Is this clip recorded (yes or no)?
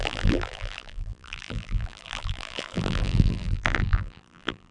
no